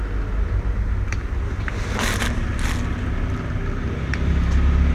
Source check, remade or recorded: recorded